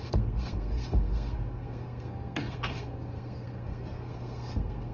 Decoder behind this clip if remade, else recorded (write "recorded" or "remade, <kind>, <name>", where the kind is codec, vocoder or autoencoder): remade, codec, SNAC